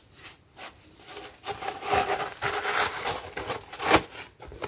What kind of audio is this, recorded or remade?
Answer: recorded